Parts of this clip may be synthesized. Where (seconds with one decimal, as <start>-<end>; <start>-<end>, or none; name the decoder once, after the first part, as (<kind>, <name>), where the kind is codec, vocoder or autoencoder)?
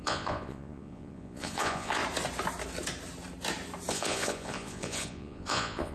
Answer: 0.0-2.0 (vocoder, Vocos); 3.9-5.9